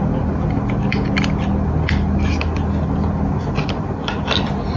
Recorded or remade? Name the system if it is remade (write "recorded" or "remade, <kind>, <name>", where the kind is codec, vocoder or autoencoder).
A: recorded